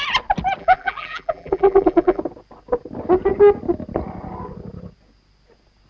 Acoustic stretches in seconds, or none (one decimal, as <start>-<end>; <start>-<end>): 0.0-0.6; 2.2-5.9